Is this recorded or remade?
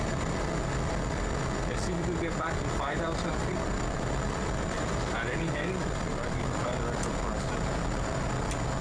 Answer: remade